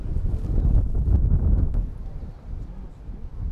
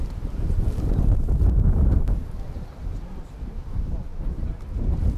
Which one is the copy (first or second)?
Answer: second